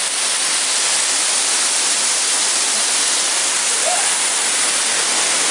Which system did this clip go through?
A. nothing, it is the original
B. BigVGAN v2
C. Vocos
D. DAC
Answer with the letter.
A